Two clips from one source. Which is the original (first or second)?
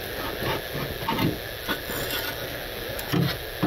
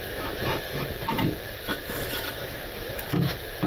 first